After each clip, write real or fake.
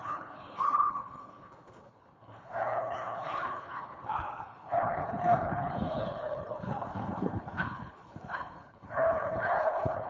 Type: fake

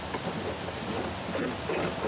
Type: real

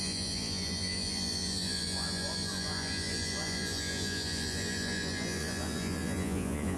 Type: fake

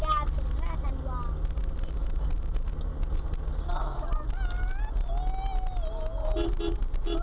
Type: real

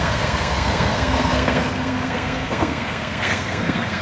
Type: fake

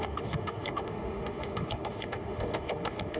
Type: fake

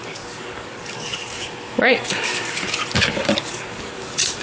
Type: fake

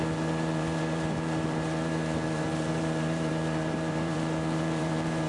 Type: fake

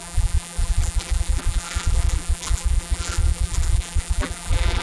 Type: fake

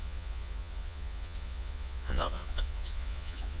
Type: fake